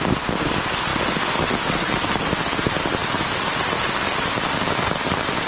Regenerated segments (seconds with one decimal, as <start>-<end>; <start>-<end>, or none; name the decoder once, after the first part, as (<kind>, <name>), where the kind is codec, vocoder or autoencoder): none